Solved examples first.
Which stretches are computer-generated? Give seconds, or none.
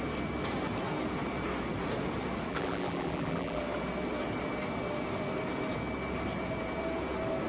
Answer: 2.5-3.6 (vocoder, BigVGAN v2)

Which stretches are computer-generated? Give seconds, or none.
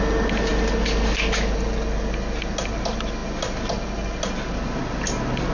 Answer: none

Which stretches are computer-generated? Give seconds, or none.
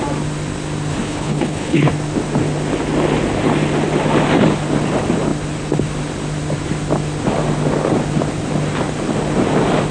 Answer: 0.9-1.9 (codec, HILCodec)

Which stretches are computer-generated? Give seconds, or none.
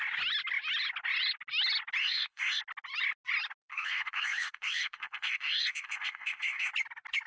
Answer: 2.0-2.6 (codec, ZipCodec); 3.7-6.7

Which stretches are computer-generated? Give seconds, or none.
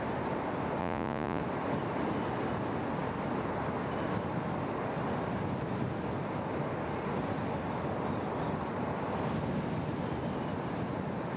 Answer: 0.8-1.4 (vocoder, Vocos)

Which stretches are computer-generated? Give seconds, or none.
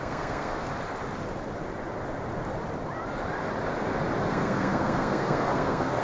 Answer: 0.0-0.7 (codec, SNAC); 4.3-6.0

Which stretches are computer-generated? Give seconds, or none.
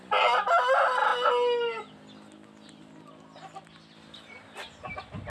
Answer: none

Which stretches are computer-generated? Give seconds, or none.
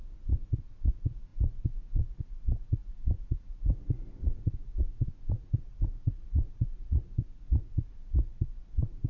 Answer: 0.0-9.1 (vocoder, Vocos)